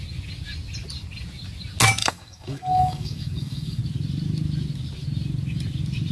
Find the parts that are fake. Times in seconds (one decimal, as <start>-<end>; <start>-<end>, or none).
2.0-3.8

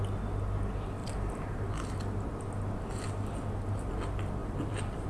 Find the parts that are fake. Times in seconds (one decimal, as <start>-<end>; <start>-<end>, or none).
1.0-1.7; 4.4-5.1

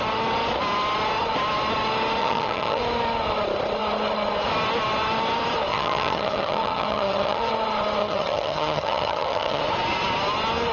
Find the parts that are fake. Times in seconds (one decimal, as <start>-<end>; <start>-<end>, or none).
2.2-2.8; 5.7-7.5; 8.0-9.6

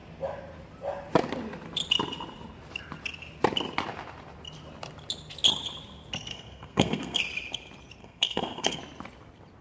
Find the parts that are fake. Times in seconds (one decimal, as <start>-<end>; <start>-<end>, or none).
6.3-7.2; 8.0-8.8

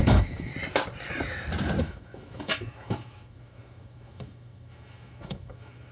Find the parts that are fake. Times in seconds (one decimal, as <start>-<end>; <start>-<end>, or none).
0.0-0.5; 1.8-5.9

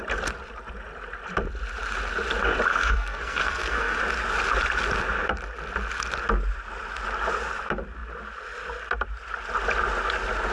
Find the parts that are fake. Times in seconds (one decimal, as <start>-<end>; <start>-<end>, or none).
2.7-4.0

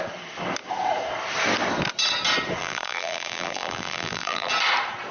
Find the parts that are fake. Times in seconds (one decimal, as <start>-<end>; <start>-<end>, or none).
2.6-4.5

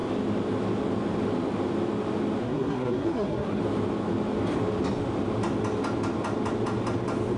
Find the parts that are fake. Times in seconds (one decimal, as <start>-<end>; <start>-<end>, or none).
2.4-3.6